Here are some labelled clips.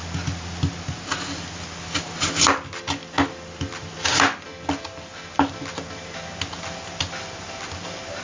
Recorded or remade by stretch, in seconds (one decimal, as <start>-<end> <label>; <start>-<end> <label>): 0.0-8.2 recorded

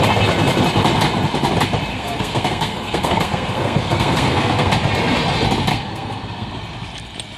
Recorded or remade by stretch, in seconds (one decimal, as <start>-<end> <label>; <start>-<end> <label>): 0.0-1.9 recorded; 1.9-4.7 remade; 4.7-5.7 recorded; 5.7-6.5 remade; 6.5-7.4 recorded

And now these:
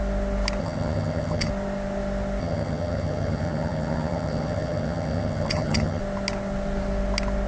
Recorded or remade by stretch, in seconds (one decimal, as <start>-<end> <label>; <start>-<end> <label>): 0.0-0.6 recorded; 0.6-1.5 remade; 1.5-2.4 recorded; 2.4-6.0 remade; 6.0-7.5 recorded

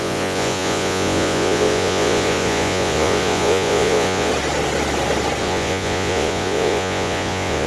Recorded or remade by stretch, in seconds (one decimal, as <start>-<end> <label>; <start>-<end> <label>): 0.0-4.3 remade; 4.3-5.4 recorded; 5.4-7.7 remade

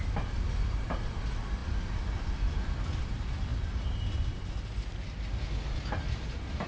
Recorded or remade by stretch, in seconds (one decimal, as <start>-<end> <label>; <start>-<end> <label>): 0.0-6.7 recorded

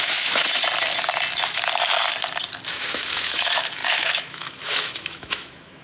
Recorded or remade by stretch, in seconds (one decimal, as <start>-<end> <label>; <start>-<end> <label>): 0.0-0.6 remade; 0.6-2.7 recorded; 2.7-5.8 remade

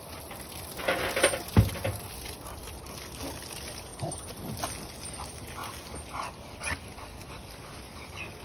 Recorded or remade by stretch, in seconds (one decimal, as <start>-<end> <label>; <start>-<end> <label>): 0.0-8.4 recorded